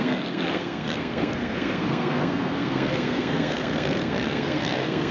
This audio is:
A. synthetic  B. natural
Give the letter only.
A